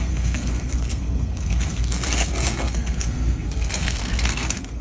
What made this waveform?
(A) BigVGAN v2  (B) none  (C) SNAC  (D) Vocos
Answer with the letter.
C